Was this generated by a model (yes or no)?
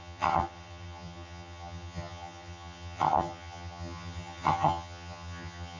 yes